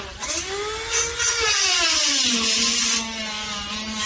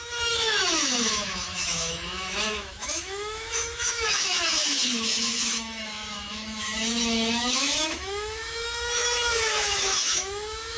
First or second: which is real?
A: first